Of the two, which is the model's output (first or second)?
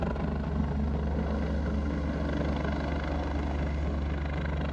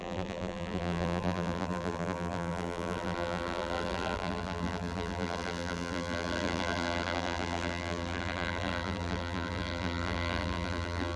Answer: second